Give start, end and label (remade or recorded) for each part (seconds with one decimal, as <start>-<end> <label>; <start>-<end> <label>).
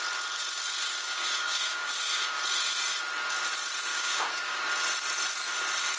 0.0-1.0 recorded; 1.0-2.4 remade; 2.4-3.9 recorded; 3.9-4.6 remade; 4.6-6.0 recorded